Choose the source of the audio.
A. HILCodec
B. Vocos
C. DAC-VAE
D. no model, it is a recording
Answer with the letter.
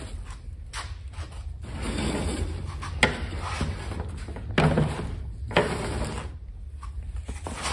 D